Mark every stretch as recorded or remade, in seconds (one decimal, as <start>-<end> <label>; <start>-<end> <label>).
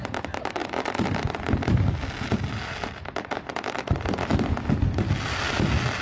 0.0-6.0 recorded